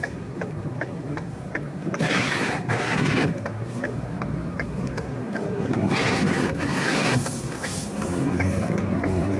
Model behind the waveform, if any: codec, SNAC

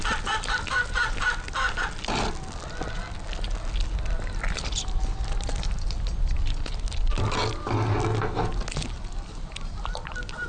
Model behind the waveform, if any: none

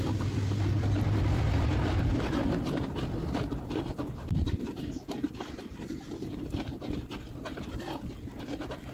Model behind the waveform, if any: vocoder, BigVGAN v2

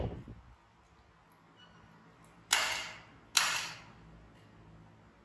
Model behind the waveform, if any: none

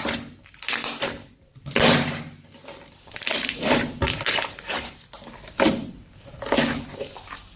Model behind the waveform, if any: none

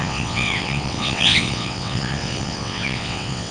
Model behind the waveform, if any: vocoder, WaveNeXt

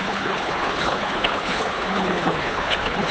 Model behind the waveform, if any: codec, HILCodec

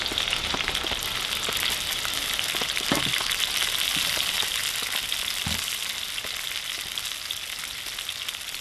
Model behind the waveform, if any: none